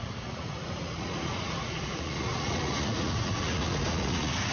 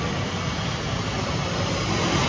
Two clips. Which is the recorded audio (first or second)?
second